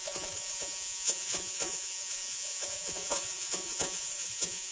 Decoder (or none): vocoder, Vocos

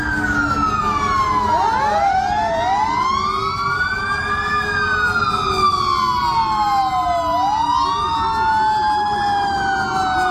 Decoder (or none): none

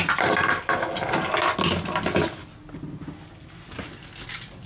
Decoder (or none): none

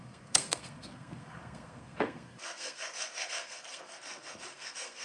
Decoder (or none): codec, SNAC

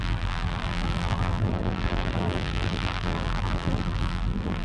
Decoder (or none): vocoder, BigVGAN v2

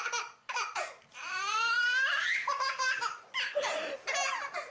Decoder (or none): vocoder, BigVGAN v2